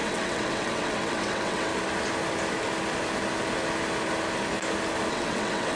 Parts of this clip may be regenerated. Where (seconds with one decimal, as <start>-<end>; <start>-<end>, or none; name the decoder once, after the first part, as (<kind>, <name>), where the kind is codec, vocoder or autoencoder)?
0.0-1.7 (vocoder, WaveNeXt); 5.1-5.8